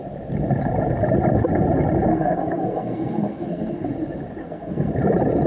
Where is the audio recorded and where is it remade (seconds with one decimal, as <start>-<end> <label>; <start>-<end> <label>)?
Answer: 0.0-2.1 recorded; 2.1-3.9 remade; 3.9-4.4 recorded; 4.4-4.9 remade; 4.9-5.5 recorded

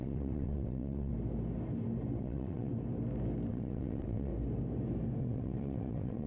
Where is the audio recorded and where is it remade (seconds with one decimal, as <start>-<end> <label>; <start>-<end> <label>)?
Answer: 0.0-1.1 remade; 1.1-2.2 recorded; 2.2-2.7 remade; 2.7-3.5 recorded; 3.5-4.3 remade; 4.3-5.2 recorded; 5.2-6.3 remade

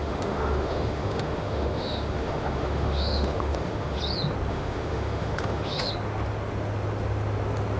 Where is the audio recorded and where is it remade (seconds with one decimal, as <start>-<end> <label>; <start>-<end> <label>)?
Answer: 0.0-4.0 remade; 4.0-4.5 recorded; 4.5-5.9 remade; 5.9-7.8 recorded

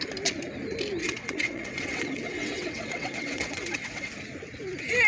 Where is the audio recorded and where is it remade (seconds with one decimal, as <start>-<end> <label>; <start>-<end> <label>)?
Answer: 0.0-1.0 recorded; 1.0-4.1 remade; 4.1-5.1 recorded

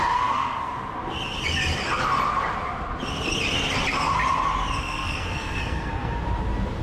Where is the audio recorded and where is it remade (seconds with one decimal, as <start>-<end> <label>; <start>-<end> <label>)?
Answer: 0.0-0.7 remade; 0.7-4.8 recorded; 4.8-6.2 remade; 6.2-6.8 recorded

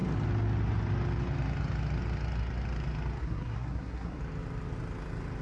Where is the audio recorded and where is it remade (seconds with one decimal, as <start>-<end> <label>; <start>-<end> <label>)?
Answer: 0.0-3.2 recorded; 3.2-4.2 remade; 4.2-5.4 recorded

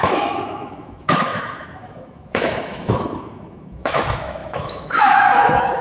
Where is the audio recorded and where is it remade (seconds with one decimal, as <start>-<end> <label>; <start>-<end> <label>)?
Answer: 0.0-5.8 remade

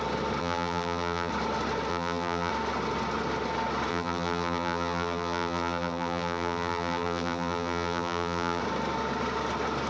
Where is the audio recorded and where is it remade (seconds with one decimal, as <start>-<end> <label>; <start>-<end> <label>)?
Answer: 0.0-0.4 recorded; 0.4-1.3 remade; 1.3-1.9 recorded; 1.9-2.5 remade; 2.5-3.9 recorded; 3.9-8.6 remade; 8.6-9.9 recorded